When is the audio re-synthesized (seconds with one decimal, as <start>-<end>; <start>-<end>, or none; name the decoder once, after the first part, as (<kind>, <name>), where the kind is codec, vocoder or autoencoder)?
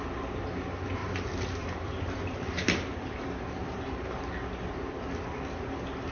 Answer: 1.0-4.2 (vocoder, BigVGAN v2)